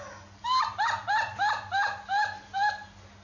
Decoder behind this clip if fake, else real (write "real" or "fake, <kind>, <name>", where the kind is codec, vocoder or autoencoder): real